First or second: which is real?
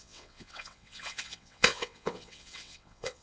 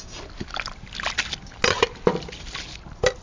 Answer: second